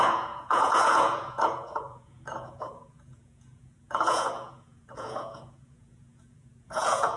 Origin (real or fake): fake